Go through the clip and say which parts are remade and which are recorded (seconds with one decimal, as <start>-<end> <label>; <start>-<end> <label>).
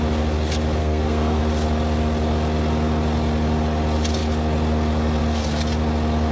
0.0-0.8 recorded; 0.8-1.4 remade; 1.4-6.3 recorded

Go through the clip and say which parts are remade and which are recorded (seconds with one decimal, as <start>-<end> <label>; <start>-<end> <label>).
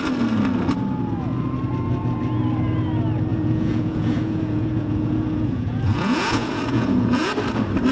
0.0-3.3 recorded; 3.3-7.3 remade; 7.3-7.9 recorded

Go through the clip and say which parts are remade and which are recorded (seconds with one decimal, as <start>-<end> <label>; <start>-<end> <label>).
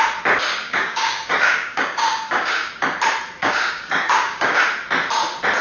0.0-0.6 recorded; 0.6-2.7 remade; 2.7-3.4 recorded; 3.4-4.6 remade; 4.6-5.6 recorded